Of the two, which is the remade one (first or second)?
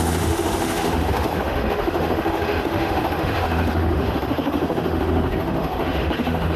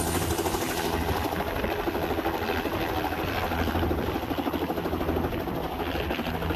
first